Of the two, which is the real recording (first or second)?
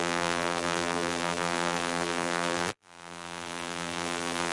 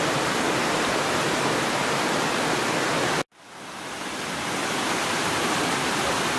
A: second